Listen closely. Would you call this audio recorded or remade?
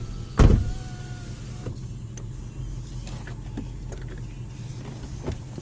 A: recorded